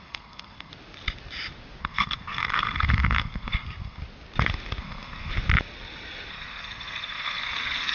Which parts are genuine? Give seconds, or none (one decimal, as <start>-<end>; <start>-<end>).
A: 0.7-1.8; 4.0-4.8; 5.3-6.3